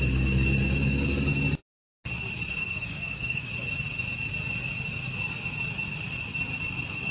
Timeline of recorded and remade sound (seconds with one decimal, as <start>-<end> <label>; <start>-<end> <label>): 0.0-2.6 recorded; 2.6-3.5 remade; 3.5-7.1 recorded